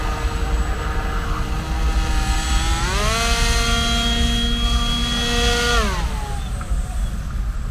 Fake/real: real